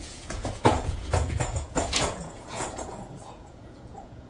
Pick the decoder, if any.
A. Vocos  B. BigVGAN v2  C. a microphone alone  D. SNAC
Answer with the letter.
A